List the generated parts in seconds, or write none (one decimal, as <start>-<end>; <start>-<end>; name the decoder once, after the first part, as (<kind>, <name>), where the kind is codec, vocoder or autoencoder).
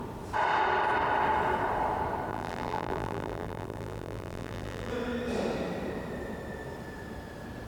2.3-4.9 (vocoder, BigVGAN v2)